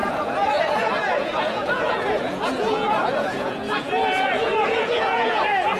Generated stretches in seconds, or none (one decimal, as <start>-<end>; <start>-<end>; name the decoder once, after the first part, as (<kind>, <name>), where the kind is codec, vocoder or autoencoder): 0.0-5.8 (vocoder, Vocos)